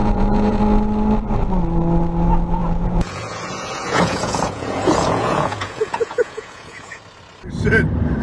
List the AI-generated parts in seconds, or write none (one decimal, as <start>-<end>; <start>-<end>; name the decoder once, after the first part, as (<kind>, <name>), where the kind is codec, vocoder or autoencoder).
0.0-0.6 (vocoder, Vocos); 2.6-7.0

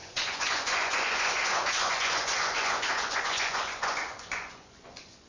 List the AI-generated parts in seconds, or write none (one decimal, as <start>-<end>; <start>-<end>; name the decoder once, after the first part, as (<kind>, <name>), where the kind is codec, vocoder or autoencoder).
0.0-5.3 (vocoder, Vocos)

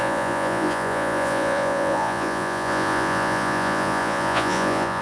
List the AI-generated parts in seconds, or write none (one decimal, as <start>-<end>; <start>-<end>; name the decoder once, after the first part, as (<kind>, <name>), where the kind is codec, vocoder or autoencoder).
0.0-5.0 (vocoder, Vocos)

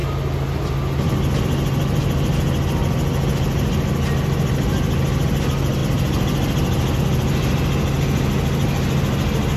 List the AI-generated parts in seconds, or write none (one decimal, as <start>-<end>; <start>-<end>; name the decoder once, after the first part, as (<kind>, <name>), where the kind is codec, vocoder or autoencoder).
none

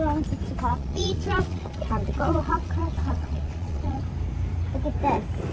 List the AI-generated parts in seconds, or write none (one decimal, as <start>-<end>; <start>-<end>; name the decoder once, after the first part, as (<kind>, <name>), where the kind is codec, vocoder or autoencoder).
0.7-4.0 (vocoder, Vocos)